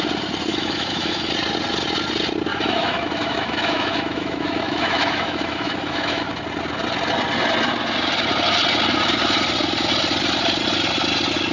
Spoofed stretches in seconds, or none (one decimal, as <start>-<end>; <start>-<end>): 0.5-1.3; 2.5-6.3

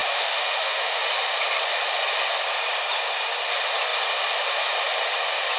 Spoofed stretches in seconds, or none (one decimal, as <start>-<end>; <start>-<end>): 0.0-1.0

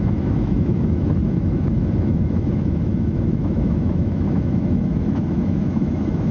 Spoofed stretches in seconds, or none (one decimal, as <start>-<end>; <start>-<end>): 0.0-6.3